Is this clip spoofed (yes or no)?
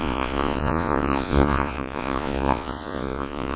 yes